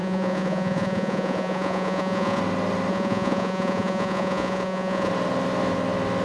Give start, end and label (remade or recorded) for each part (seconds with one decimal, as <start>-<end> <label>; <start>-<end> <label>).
0.0-2.4 remade; 2.4-2.9 recorded; 2.9-5.1 remade; 5.1-6.2 recorded

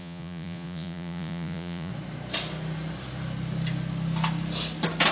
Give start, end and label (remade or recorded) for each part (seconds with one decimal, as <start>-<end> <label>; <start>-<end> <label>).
0.0-1.9 remade; 1.9-5.1 recorded

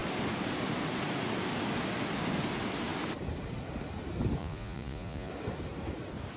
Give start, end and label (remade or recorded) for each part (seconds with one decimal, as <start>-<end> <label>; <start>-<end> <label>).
0.0-4.4 recorded; 4.4-5.3 remade; 5.3-6.4 recorded